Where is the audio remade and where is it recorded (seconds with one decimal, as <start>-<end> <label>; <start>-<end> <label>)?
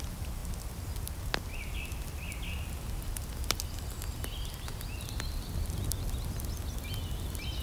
0.0-7.6 recorded